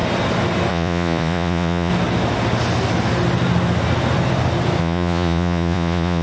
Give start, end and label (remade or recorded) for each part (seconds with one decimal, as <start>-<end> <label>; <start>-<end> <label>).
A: 0.0-0.7 recorded; 0.7-1.9 remade; 1.9-4.8 recorded; 4.8-6.2 remade